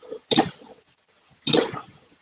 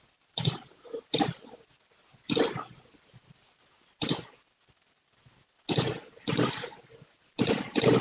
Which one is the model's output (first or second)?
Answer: first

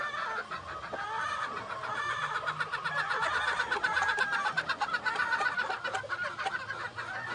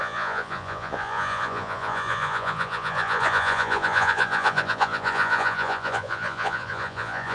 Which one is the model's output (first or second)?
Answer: second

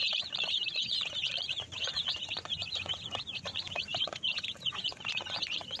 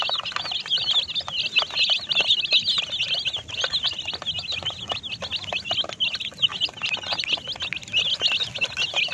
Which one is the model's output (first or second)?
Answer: first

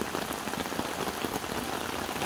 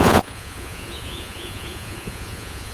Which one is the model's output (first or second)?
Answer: second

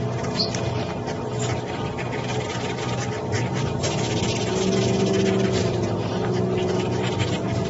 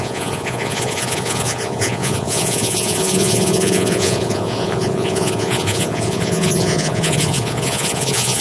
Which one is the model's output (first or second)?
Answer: second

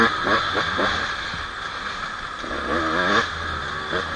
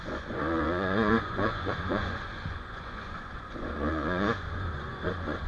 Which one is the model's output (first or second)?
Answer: second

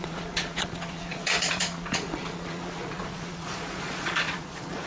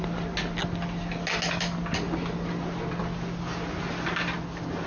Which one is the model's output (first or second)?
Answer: first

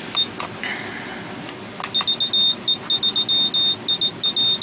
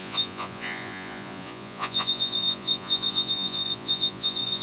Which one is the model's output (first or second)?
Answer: second